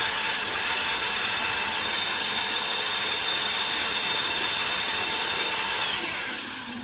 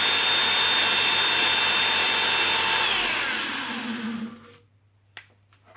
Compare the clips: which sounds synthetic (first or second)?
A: first